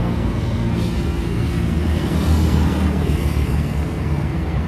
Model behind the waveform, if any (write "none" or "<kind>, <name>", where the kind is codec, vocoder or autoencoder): codec, SNAC